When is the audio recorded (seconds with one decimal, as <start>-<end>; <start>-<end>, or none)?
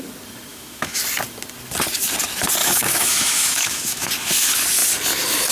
0.0-0.5; 1.0-2.6; 4.1-5.5